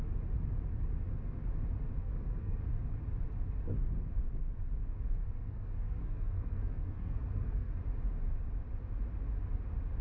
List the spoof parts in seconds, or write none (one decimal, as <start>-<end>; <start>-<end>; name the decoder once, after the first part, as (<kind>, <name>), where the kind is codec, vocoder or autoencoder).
2.0-2.6 (codec, SNAC); 5.2-7.7